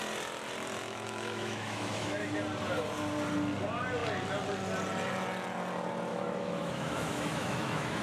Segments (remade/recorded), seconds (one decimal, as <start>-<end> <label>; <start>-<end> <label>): 0.0-0.8 recorded; 0.8-2.3 remade; 2.3-6.1 recorded; 6.1-8.0 remade